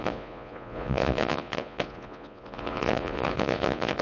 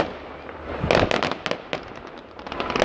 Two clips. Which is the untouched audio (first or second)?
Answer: second